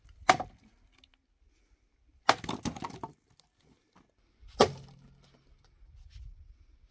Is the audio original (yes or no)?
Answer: yes